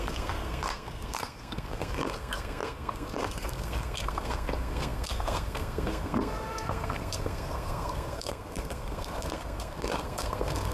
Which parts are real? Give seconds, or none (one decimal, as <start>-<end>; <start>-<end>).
none